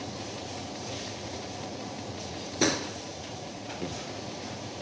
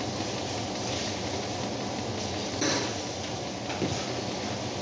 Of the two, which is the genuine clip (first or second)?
second